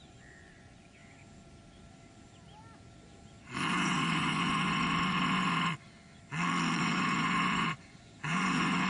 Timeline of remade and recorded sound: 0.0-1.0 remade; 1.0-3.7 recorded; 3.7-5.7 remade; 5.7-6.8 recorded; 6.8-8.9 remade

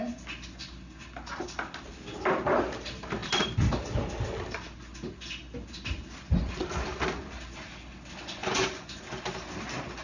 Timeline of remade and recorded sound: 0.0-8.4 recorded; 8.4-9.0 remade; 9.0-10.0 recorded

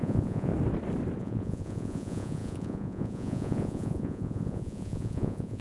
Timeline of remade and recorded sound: 0.0-0.5 remade; 0.5-1.2 recorded; 1.2-5.6 remade

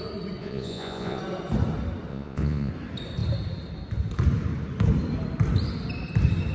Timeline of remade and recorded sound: 0.0-0.4 recorded; 0.4-1.2 remade; 1.2-2.1 recorded; 2.1-2.7 remade; 2.7-6.5 recorded

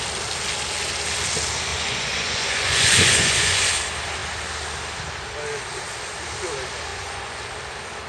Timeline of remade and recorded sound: 0.0-1.7 recorded; 1.7-3.7 remade; 3.7-6.9 recorded; 6.9-7.4 remade; 7.4-8.1 recorded

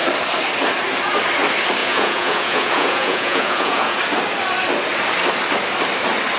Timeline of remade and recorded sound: 0.0-1.8 recorded; 1.8-4.0 remade; 4.0-6.4 recorded

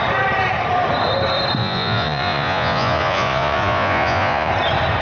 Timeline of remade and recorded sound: 0.0-1.6 recorded; 1.6-4.5 remade; 4.5-5.0 recorded

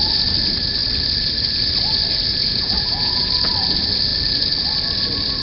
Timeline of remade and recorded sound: 0.0-2.3 recorded; 2.3-3.3 remade; 3.3-5.4 recorded